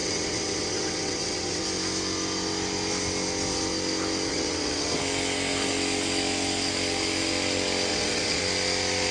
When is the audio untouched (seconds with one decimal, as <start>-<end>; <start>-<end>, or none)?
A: 1.6-4.3; 5.0-7.9; 8.4-9.1